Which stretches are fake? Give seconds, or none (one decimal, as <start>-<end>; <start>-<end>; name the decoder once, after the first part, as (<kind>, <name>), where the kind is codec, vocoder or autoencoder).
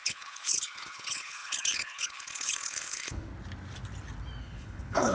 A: 0.0-3.3 (codec, HILCodec); 4.4-5.1